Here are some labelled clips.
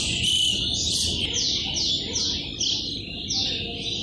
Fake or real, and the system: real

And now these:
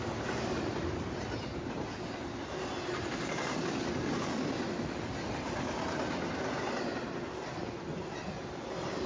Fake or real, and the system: real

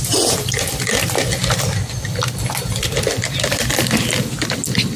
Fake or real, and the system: real